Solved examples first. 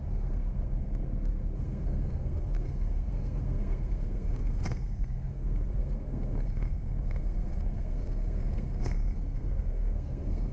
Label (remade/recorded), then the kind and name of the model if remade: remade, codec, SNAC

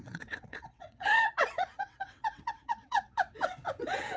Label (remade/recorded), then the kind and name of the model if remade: remade, vocoder, WaveNeXt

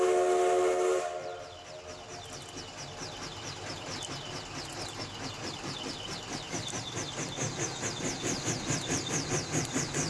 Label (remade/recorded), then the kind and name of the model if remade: recorded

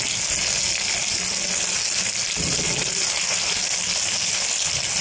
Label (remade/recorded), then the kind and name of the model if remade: recorded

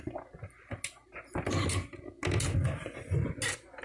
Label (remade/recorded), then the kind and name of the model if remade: recorded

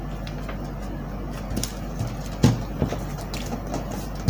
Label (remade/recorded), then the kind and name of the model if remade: recorded